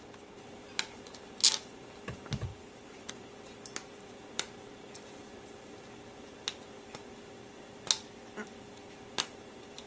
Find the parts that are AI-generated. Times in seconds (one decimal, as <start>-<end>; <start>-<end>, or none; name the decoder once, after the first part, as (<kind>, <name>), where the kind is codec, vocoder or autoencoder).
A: 2.5-3.1 (vocoder, BigVGAN v2)